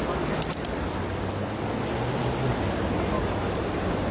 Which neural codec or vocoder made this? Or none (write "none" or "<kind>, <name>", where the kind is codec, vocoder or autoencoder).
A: none